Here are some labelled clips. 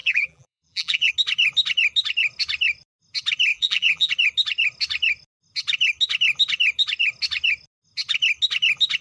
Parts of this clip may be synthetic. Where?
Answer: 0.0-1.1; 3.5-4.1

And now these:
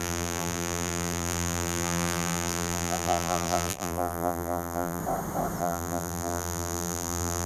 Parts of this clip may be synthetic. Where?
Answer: 0.0-5.0; 5.6-7.5

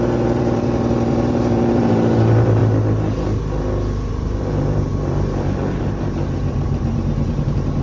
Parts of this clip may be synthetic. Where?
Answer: 0.0-2.6; 4.1-7.8

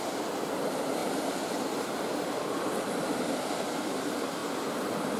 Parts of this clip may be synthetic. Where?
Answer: 4.4-5.2

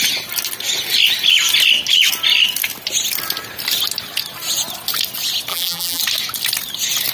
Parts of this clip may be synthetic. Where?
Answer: 5.5-6.0